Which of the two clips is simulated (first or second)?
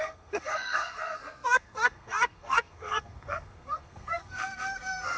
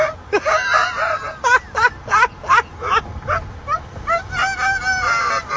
first